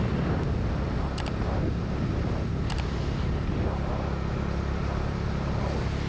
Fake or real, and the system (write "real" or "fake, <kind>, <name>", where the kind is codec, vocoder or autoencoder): real